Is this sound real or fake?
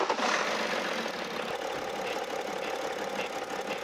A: real